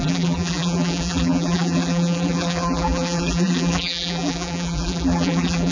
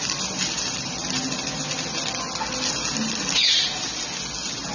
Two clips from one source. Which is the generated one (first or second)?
first